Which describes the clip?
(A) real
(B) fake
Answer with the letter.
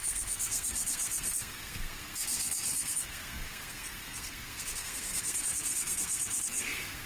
B